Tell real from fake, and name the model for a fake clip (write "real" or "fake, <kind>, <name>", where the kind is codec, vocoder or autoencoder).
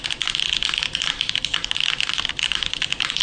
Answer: real